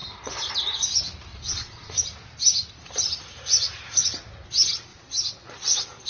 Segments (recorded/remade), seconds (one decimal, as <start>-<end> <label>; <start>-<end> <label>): 0.0-0.5 remade; 0.5-1.3 recorded; 1.3-1.9 remade; 1.9-4.9 recorded; 4.9-6.1 remade